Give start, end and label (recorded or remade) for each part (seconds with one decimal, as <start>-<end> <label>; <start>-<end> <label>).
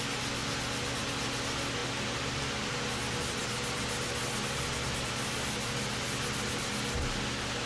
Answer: 0.0-7.7 recorded